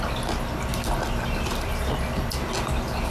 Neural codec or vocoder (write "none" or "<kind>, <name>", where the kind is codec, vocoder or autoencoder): none